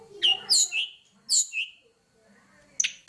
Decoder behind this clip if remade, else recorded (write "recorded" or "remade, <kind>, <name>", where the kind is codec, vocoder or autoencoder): recorded